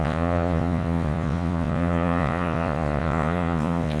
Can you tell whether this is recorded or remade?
remade